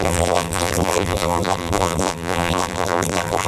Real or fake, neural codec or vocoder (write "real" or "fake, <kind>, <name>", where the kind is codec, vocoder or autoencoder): fake, vocoder, BigVGAN v2